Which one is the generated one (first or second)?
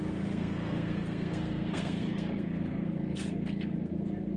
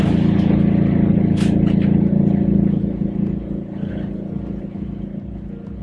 first